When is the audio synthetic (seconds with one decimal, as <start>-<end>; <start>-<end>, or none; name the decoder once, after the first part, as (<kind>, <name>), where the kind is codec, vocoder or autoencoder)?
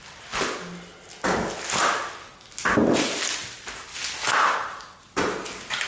none